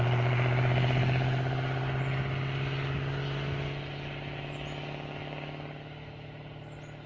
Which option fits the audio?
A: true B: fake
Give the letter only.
A